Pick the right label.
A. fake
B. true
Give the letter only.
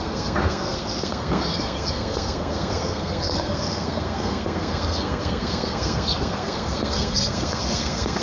A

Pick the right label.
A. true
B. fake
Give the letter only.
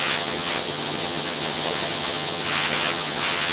B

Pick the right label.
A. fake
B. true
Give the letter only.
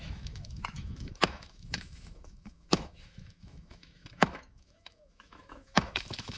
A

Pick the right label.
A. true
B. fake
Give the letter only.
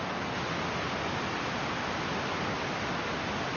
A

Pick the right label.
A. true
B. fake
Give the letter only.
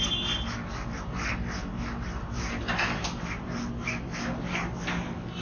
A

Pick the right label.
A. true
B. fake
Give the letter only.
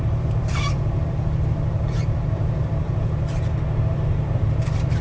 B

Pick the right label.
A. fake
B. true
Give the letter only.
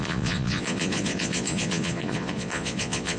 A